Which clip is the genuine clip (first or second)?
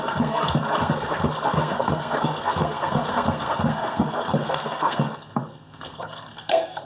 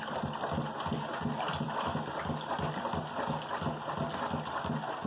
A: second